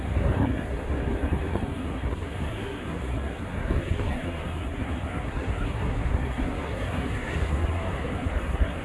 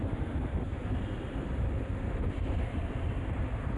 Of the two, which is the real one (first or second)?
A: second